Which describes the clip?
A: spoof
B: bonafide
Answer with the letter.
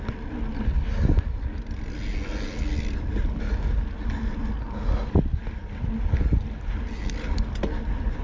B